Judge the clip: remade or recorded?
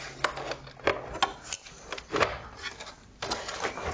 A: recorded